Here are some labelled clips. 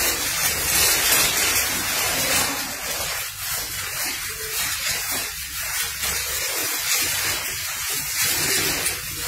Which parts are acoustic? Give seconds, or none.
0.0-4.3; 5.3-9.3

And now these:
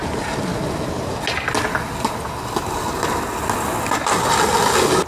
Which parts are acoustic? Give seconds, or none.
0.0-5.1

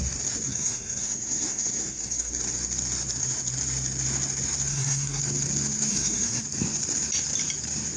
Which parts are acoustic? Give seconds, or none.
0.0-0.5; 2.3-4.7; 5.2-5.9; 6.4-8.0

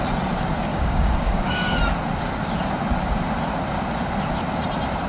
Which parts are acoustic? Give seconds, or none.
0.0-0.7; 1.8-5.1

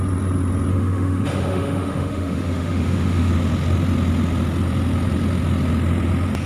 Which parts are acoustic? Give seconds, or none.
0.0-0.7; 3.3-6.5

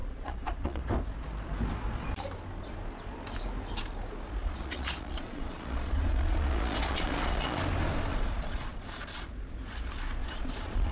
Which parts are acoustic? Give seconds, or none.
0.8-4.4; 7.6-8.1; 8.8-10.2

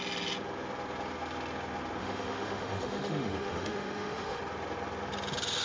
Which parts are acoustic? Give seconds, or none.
0.0-2.0; 4.4-5.6